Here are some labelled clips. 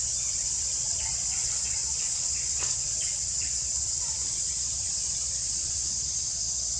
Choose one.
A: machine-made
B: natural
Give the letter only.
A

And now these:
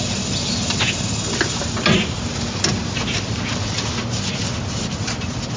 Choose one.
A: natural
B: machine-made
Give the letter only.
A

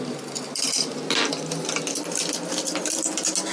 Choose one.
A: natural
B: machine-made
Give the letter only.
A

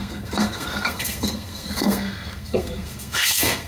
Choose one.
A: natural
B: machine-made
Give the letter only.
B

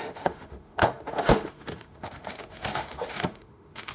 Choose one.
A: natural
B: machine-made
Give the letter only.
B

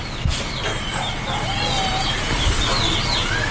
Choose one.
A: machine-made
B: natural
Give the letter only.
B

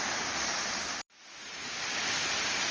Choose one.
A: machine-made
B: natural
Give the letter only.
B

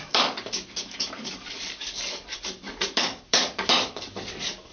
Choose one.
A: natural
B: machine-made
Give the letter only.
B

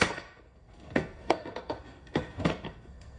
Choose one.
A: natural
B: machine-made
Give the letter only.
B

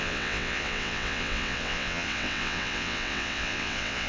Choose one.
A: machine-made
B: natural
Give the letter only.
A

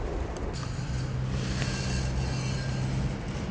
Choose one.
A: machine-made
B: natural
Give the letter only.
B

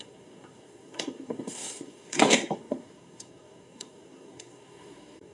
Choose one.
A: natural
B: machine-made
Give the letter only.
B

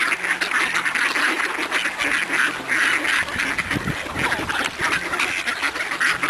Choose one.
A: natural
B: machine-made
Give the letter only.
A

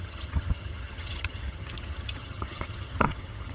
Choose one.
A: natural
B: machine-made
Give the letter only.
B